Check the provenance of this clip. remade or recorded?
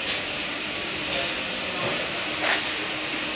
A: recorded